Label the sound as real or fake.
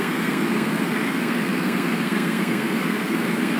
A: fake